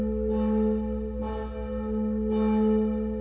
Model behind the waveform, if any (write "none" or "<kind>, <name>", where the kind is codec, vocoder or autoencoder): none